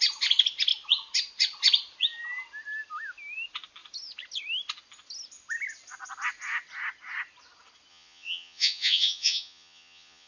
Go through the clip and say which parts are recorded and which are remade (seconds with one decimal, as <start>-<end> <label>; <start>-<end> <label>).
0.0-7.9 recorded; 7.9-10.3 remade